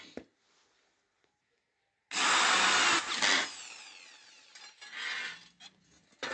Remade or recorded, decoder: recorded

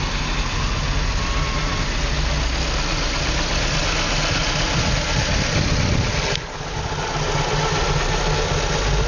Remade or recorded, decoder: recorded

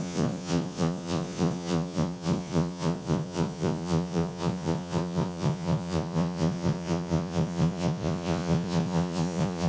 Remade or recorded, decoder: remade, vocoder, Vocos